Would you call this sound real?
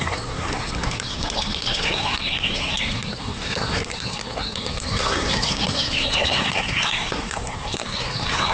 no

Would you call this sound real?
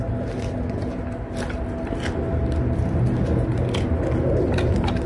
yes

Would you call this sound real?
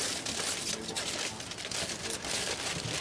yes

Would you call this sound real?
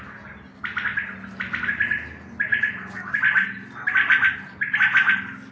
yes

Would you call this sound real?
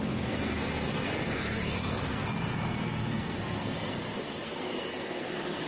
no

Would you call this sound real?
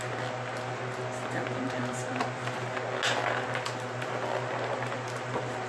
yes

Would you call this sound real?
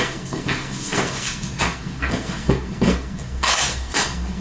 no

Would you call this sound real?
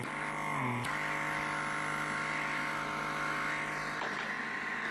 yes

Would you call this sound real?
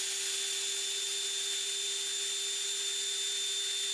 yes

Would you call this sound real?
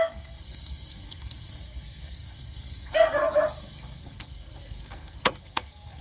no